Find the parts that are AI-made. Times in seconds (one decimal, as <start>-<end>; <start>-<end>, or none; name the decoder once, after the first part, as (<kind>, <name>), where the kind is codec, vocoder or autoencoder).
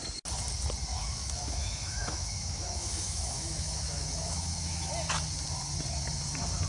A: 0.9-4.9 (autoencoder, DAC-VAE)